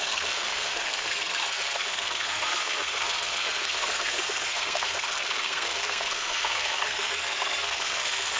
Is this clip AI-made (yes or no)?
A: yes